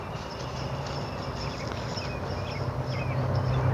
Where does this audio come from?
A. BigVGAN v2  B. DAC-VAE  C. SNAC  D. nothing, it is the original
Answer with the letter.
D